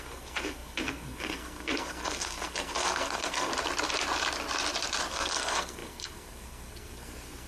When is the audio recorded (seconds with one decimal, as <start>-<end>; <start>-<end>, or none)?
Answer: 3.5-5.1